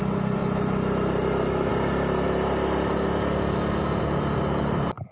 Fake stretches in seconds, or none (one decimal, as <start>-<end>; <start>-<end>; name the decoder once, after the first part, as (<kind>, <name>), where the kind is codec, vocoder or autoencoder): none